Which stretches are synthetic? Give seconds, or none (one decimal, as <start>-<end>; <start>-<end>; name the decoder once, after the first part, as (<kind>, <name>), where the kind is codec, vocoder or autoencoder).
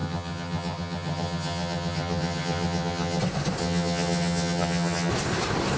0.0-3.2 (vocoder, HiFi-GAN); 3.6-5.1